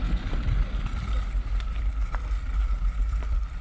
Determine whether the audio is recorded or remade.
recorded